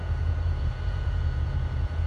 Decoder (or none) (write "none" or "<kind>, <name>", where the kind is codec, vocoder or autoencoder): vocoder, Vocos